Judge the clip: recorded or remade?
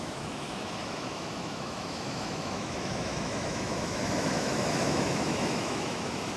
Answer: remade